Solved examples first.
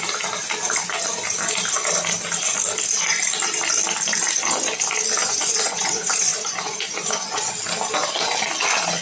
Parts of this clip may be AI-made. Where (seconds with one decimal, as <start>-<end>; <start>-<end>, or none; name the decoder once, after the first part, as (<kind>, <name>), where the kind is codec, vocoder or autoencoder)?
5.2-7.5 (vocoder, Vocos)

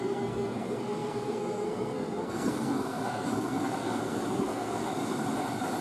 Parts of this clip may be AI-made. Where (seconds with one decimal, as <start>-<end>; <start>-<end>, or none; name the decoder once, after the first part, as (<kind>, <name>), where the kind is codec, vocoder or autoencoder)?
0.0-4.8 (codec, SNAC)

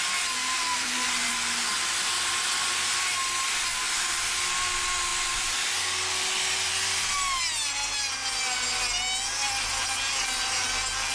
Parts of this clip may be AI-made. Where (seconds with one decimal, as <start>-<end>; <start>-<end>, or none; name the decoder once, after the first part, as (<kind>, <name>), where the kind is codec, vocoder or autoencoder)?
0.4-1.3 (vocoder, BigVGAN v2)

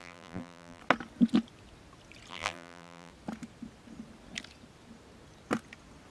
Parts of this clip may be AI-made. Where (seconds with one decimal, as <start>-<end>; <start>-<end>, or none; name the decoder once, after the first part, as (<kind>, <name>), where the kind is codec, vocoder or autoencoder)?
0.0-0.8 (vocoder, BigVGAN v2); 2.3-3.1

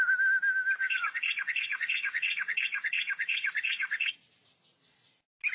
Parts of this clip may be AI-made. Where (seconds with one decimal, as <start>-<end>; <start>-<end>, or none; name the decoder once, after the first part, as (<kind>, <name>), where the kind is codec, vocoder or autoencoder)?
0.8-4.1 (vocoder, WaveNeXt)

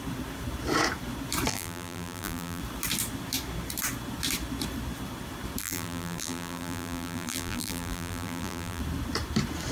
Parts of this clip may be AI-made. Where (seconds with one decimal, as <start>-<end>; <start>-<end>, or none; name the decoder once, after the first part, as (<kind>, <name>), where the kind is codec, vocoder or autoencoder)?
1.5-2.6 (vocoder, BigVGAN v2); 5.6-8.8

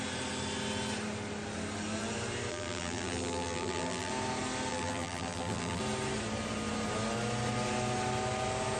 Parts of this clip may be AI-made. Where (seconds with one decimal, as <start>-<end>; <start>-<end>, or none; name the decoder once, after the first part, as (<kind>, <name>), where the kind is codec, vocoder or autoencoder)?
2.5-4.1 (vocoder, BigVGAN v2); 4.7-5.8

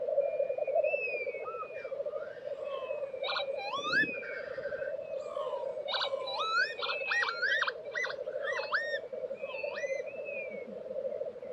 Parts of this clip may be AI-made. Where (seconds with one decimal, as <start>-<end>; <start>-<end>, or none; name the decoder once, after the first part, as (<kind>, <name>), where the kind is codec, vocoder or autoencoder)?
none